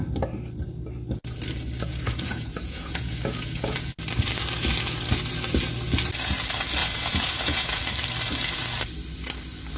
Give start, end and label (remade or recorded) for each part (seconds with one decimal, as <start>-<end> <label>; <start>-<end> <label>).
0.0-1.9 recorded; 1.9-3.9 remade; 3.9-6.8 recorded; 6.8-7.8 remade; 7.8-9.8 recorded